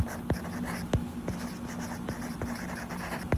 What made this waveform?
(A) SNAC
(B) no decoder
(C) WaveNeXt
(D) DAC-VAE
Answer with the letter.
B